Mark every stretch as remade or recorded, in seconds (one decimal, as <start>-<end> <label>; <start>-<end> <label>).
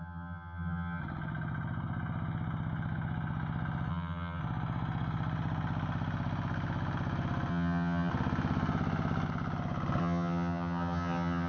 0.0-1.0 remade; 1.0-3.9 recorded; 3.9-4.4 remade; 4.4-7.5 recorded; 7.5-8.1 remade; 8.1-10.0 recorded; 10.0-11.5 remade